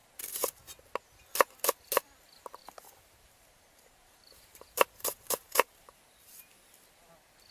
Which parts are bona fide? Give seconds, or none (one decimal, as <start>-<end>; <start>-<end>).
0.6-2.6; 6.0-7.5